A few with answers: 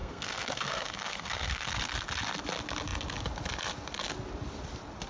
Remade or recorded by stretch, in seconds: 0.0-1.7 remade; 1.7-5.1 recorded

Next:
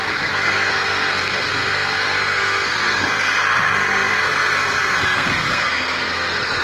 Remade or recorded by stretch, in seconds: 0.0-6.6 remade

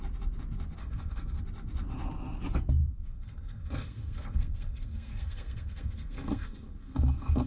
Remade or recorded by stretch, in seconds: 0.0-0.8 recorded; 0.8-1.4 remade; 1.4-2.8 recorded; 2.8-7.5 remade

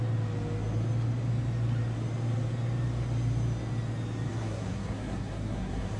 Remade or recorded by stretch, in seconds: 0.0-4.3 recorded; 4.3-6.0 remade

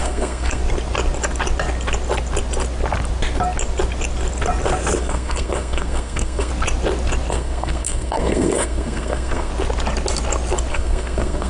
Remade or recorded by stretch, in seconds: 0.0-0.6 remade; 0.6-5.0 recorded; 5.0-6.5 remade; 6.5-7.3 recorded; 7.3-9.5 remade; 9.5-10.7 recorded; 10.7-11.5 remade

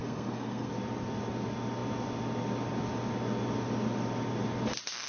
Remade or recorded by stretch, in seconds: 0.0-0.7 remade; 0.7-5.1 recorded

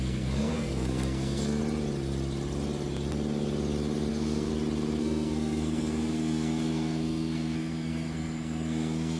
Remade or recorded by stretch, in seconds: 0.0-1.6 remade; 1.6-4.1 recorded; 4.1-4.5 remade; 4.5-5.0 recorded; 5.0-9.2 remade

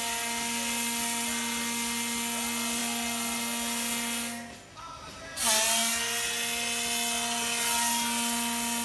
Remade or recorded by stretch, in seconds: 0.0-8.8 recorded